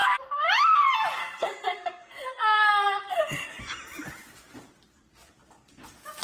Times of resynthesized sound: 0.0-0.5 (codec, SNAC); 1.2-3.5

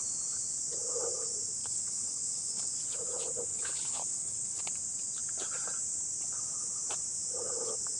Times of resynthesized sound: 1.6-2.7 (codec, HILCodec); 3.5-4.6